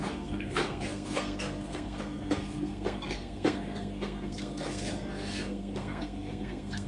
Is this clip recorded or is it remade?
remade